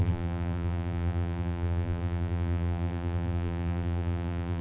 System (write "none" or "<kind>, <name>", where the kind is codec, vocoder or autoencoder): vocoder, BigVGAN v2